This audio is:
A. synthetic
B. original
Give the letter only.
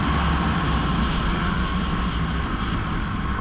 B